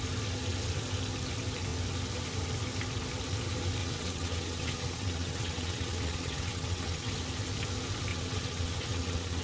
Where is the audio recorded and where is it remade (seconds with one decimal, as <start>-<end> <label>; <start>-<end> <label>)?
0.0-3.8 recorded; 3.8-7.1 remade; 7.1-8.1 recorded; 8.1-9.4 remade